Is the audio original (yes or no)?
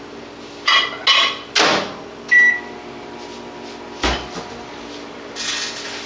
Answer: yes